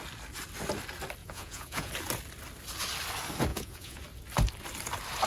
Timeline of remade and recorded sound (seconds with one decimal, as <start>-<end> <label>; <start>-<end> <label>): 0.0-1.2 recorded; 1.2-1.9 remade; 1.9-3.5 recorded; 3.5-4.0 remade; 4.0-5.3 recorded